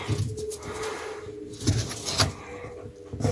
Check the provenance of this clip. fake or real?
real